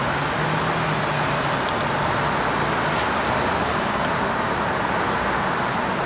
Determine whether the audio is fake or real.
real